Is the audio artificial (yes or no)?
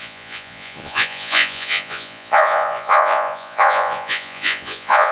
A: yes